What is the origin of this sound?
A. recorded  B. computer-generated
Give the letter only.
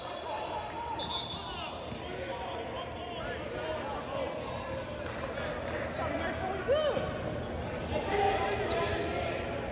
A